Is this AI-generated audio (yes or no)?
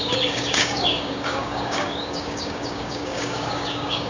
yes